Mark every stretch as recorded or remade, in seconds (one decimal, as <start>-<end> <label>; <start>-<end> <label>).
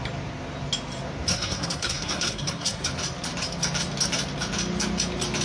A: 0.0-1.3 recorded; 1.3-2.8 remade; 2.8-5.4 recorded